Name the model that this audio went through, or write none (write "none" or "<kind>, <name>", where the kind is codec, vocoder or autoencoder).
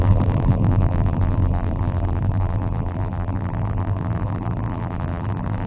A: vocoder, BigVGAN v2